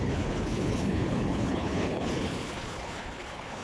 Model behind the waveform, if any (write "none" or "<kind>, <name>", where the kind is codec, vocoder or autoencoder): codec, HILCodec